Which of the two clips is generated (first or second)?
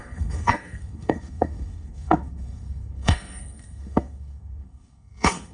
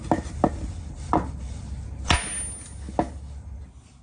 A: first